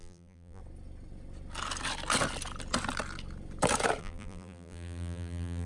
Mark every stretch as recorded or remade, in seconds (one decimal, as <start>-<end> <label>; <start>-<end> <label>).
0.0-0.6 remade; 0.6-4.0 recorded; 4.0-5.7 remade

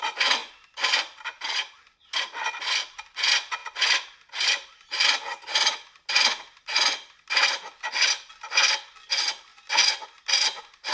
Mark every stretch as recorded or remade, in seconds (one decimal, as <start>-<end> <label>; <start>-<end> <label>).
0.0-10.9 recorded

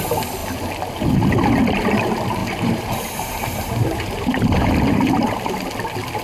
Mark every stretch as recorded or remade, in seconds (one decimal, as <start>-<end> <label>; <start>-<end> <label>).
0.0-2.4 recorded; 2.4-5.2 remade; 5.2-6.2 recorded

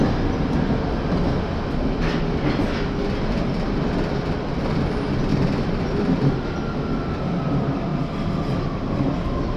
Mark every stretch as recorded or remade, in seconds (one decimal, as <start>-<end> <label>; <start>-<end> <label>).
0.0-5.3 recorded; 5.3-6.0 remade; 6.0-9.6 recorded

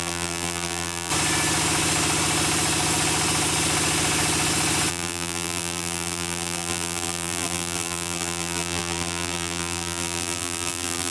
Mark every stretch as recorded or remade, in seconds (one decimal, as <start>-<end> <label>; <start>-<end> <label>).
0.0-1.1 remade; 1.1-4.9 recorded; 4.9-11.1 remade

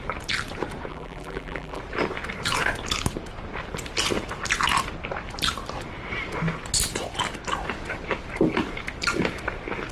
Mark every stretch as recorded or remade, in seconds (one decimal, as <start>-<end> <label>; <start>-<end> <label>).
0.0-0.9 recorded; 0.9-1.8 remade; 1.8-9.9 recorded

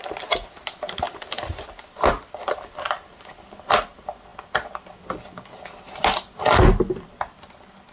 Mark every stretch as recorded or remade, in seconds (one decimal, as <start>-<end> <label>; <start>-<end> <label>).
0.0-7.9 recorded

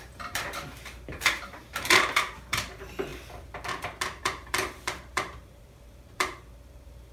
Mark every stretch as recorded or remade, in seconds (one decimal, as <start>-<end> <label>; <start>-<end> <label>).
0.0-3.1 remade; 3.1-4.2 recorded; 4.2-7.1 remade